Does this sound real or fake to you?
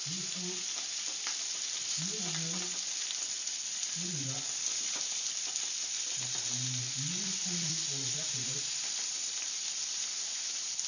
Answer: fake